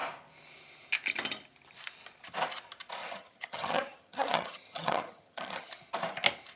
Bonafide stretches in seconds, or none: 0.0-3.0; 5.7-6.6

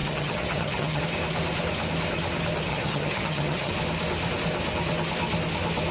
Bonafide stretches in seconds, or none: 1.0-2.7; 3.7-5.9

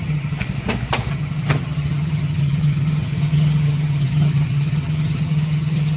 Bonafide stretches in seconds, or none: 0.4-1.1

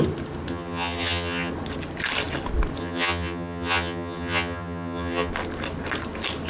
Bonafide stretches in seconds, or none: 0.0-0.5; 1.5-2.8; 5.3-6.5

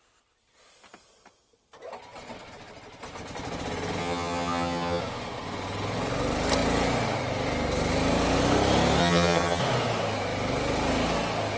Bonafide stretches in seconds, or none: 0.0-4.0; 5.0-9.0; 9.6-11.6

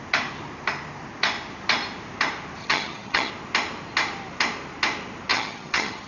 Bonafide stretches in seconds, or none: 0.0-2.6; 3.3-5.3

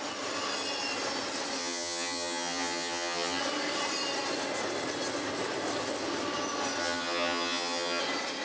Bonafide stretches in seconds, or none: 0.0-1.6; 3.4-6.8; 8.0-8.4